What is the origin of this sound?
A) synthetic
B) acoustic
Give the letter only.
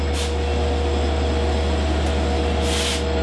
B